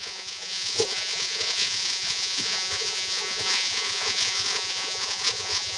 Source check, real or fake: fake